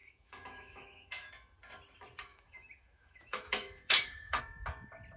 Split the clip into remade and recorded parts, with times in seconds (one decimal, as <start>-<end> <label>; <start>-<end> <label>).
0.0-1.3 remade; 1.3-2.3 recorded; 2.3-4.4 remade; 4.4-5.2 recorded